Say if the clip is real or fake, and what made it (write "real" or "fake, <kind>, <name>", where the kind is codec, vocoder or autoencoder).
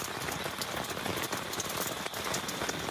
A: real